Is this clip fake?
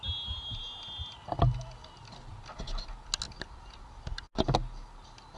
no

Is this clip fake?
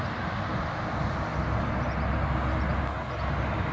no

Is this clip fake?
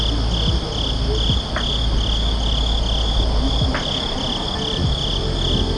no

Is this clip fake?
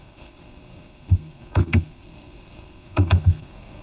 yes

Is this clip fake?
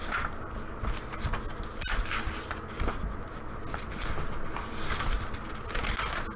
no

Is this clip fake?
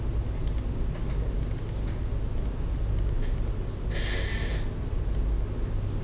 no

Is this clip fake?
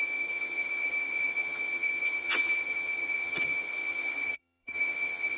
yes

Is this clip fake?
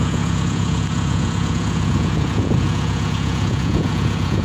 yes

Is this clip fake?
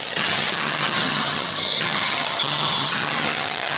yes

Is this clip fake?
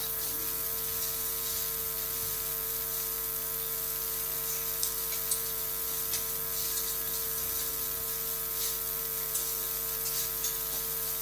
no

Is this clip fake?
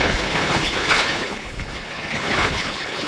yes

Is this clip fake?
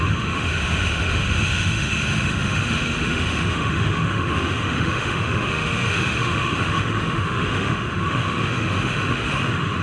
yes